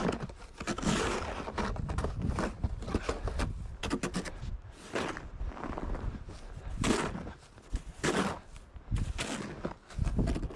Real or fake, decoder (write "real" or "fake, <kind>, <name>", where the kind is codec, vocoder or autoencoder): real